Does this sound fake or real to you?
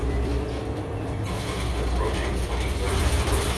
fake